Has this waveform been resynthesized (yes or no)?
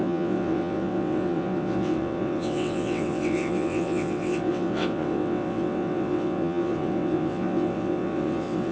yes